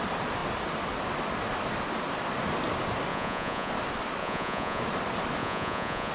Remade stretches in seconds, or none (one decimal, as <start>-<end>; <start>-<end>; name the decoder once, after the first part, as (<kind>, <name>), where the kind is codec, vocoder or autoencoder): 3.1-3.7 (vocoder, Vocos); 4.2-4.8; 5.4-6.1